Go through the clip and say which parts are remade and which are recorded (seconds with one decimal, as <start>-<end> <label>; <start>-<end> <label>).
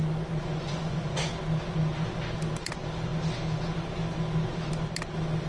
0.0-0.4 recorded; 0.4-1.3 remade; 1.3-5.5 recorded